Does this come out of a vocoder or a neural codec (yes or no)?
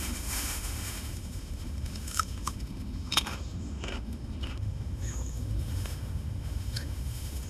yes